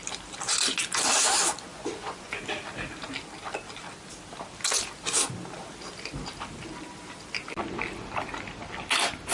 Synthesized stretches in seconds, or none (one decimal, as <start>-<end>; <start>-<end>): 1.7-2.4